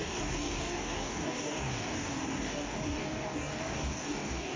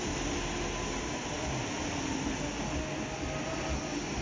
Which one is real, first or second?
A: second